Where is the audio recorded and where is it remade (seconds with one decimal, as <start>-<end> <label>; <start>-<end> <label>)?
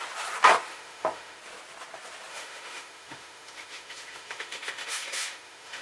0.0-0.7 recorded; 0.7-1.4 remade; 1.4-2.3 recorded; 2.3-5.8 remade